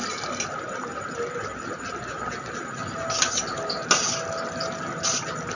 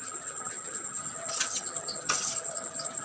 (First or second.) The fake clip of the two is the second